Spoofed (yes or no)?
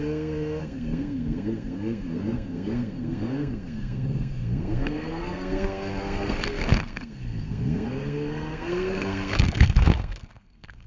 yes